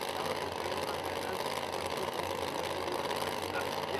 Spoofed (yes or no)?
no